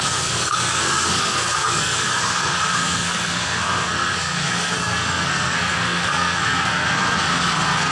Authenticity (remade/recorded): remade